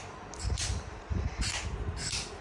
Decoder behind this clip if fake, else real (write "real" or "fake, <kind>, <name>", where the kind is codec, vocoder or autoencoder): real